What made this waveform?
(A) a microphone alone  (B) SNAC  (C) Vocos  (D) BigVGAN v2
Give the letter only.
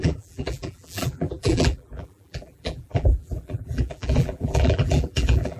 D